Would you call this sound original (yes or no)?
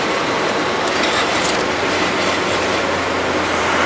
yes